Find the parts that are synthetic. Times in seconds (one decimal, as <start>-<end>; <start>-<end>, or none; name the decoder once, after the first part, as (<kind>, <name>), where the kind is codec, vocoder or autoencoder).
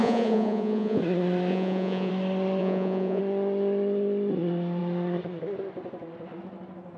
0.0-1.0 (vocoder, Vocos); 1.5-2.1; 2.6-3.2